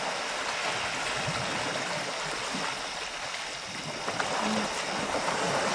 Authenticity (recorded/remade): recorded